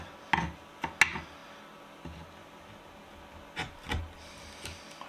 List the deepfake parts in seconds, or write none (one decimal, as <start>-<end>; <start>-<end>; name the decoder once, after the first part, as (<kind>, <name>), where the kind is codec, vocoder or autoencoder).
none